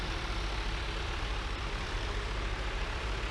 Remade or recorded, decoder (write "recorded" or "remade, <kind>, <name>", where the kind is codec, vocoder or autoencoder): remade, vocoder, BigVGAN v2